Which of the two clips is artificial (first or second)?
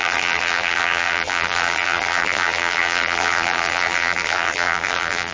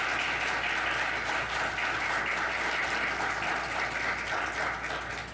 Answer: first